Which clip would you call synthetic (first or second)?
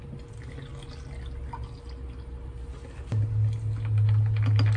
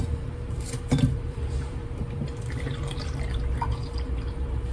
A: second